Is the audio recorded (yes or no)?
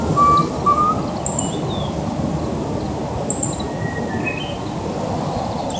yes